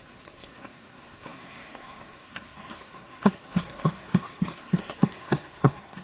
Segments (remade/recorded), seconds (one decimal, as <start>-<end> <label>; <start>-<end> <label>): 0.0-6.0 remade